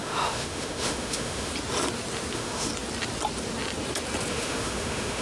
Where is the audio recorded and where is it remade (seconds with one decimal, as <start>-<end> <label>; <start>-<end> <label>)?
0.0-1.5 remade; 1.5-2.3 recorded; 2.3-2.7 remade; 2.7-4.3 recorded; 4.3-5.2 remade